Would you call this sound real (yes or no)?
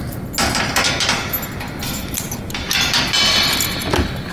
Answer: yes